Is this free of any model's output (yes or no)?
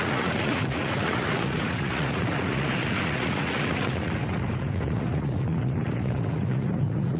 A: no